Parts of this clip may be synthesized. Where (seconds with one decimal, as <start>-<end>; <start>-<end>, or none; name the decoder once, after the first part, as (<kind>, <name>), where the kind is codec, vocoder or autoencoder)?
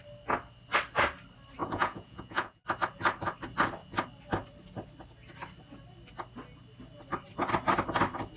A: 1.6-2.6 (vocoder, Vocos)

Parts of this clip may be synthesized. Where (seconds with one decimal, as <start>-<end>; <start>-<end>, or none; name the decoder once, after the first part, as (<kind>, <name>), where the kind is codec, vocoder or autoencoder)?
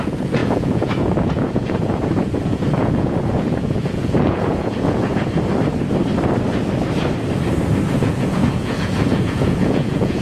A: 0.0-5.1 (vocoder, Vocos); 7.9-10.2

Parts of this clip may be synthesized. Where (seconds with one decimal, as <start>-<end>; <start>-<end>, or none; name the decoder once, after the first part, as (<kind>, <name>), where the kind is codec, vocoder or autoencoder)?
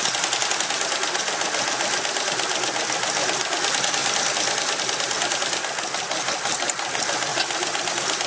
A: none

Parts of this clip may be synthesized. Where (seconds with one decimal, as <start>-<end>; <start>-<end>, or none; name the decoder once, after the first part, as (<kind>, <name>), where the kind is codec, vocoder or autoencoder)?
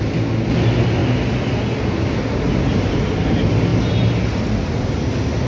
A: none